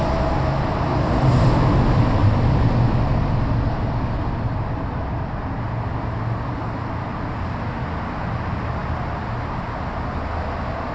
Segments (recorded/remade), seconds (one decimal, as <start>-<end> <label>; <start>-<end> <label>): 0.0-10.9 recorded